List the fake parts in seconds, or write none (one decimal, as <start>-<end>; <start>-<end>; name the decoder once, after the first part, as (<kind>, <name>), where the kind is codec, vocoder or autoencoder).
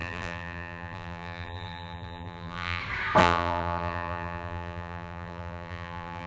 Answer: 0.0-2.8 (vocoder, BigVGAN v2); 3.2-6.3